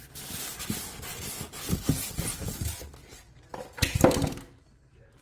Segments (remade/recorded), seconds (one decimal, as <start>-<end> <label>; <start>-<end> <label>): 0.0-1.1 recorded; 1.1-1.7 remade; 1.7-5.2 recorded